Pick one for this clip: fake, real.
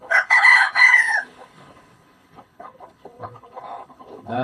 fake